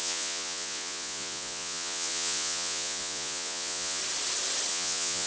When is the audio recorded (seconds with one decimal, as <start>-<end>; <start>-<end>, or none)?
4.0-4.7